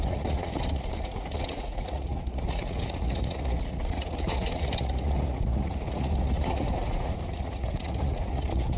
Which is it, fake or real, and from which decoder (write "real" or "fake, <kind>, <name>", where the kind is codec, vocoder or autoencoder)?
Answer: fake, vocoder, Vocos